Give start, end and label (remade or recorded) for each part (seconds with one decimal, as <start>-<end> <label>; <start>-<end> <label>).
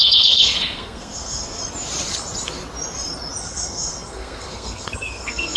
0.0-1.6 remade; 1.6-3.4 recorded; 3.4-5.6 remade